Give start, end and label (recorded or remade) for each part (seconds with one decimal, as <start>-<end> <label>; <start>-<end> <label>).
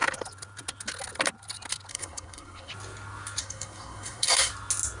0.0-1.9 recorded; 1.9-2.7 remade; 2.7-3.4 recorded; 3.4-4.5 remade; 4.5-5.0 recorded